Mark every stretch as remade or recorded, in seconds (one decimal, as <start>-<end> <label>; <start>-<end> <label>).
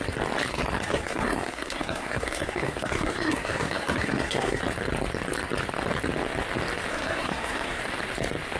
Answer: 0.0-0.5 recorded; 0.5-4.6 remade; 4.6-6.9 recorded; 6.9-7.8 remade; 7.8-8.6 recorded